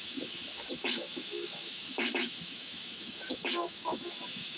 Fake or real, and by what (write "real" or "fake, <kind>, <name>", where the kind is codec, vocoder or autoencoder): fake, autoencoder, DAC-VAE